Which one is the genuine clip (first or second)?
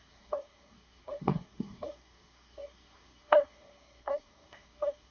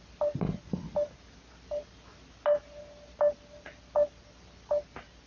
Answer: second